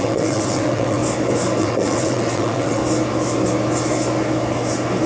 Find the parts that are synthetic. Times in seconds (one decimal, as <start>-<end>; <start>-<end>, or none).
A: 0.0-1.0; 1.6-2.8